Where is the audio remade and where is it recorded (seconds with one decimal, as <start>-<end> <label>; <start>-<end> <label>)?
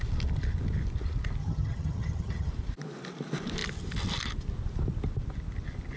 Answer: 0.0-1.4 recorded; 1.4-2.5 remade; 2.5-6.0 recorded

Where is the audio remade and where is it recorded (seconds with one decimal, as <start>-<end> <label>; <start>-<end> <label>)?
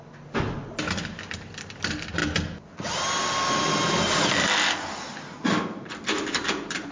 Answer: 0.0-6.9 recorded